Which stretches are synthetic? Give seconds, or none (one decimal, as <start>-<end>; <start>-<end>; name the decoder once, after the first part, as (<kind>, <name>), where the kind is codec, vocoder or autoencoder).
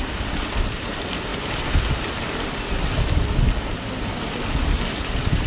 none